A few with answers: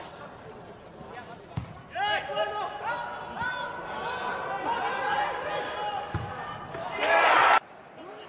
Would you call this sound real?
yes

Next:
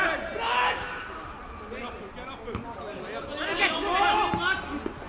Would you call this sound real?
yes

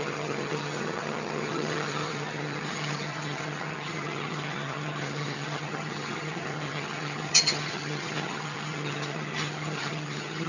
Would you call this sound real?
no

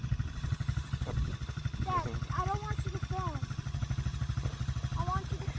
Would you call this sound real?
yes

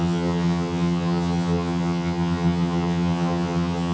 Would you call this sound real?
no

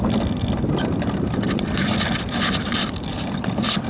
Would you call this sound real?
yes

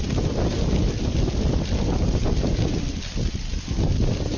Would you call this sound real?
yes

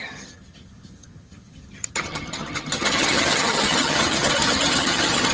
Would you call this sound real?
no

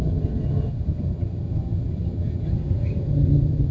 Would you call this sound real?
no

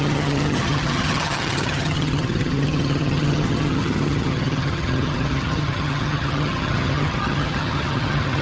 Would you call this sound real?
no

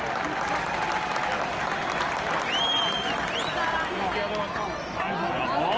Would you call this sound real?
yes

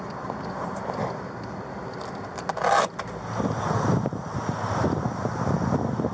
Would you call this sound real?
yes